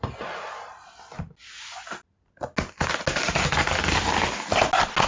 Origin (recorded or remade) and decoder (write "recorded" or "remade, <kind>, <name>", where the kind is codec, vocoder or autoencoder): recorded